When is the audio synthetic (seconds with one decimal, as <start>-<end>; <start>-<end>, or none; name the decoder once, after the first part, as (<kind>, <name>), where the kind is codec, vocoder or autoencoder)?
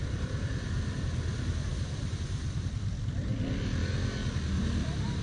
none